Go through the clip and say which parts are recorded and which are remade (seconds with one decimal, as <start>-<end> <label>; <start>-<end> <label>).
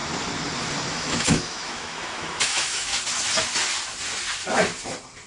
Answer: 0.0-0.9 recorded; 0.9-2.9 remade; 2.9-5.3 recorded